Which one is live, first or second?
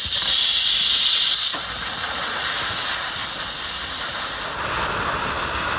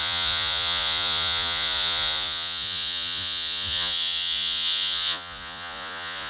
first